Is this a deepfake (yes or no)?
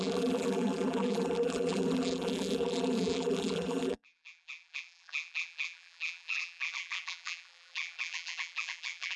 yes